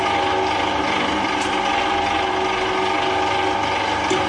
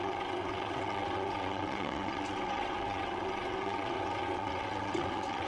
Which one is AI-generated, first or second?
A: second